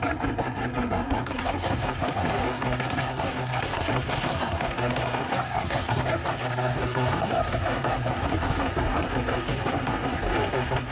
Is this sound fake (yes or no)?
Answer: yes